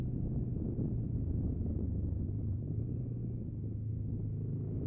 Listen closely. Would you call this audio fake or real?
real